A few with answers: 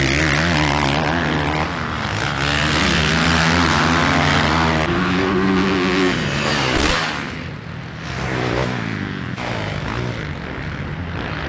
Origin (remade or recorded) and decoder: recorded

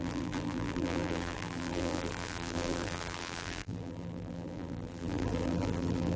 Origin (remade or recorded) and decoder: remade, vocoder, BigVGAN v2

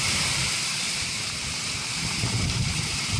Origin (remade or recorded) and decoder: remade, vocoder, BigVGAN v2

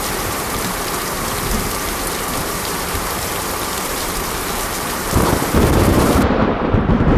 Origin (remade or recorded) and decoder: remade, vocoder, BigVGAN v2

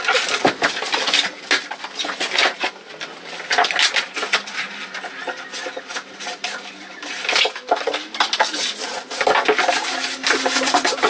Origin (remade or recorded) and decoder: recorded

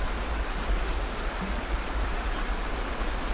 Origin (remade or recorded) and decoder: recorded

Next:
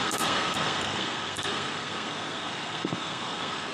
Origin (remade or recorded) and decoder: remade, codec, SNAC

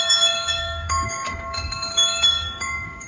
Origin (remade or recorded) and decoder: remade, codec, DAC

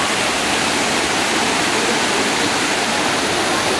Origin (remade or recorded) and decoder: recorded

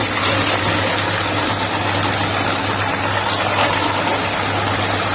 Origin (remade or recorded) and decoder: recorded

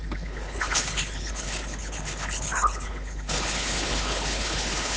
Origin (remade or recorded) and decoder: remade, codec, HILCodec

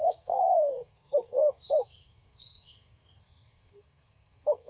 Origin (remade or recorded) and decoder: remade, codec, SNAC